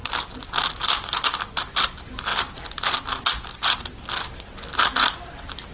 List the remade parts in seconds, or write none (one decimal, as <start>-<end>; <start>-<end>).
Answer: none